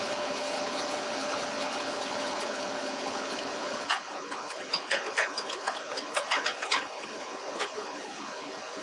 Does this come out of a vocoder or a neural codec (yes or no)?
yes